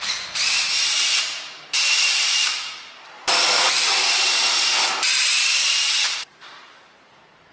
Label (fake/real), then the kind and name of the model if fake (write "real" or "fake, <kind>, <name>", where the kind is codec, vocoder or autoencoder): fake, vocoder, BigVGAN v2